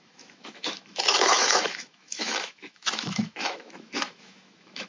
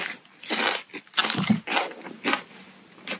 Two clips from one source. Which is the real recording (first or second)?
second